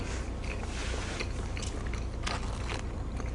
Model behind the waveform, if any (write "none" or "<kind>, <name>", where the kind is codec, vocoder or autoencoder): none